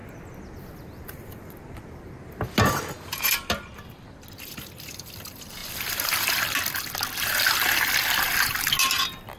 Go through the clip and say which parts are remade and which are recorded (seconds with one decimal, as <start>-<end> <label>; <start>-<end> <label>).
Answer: 0.0-9.4 recorded